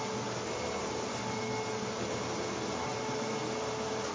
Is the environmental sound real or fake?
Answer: real